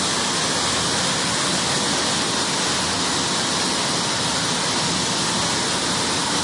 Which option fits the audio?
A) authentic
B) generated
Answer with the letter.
A